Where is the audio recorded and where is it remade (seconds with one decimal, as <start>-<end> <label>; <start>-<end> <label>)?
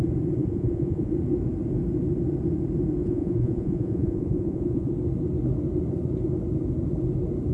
0.0-0.4 recorded; 0.4-1.1 remade; 1.1-3.0 recorded; 3.0-4.9 remade; 4.9-7.5 recorded